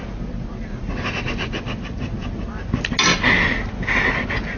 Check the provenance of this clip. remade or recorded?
recorded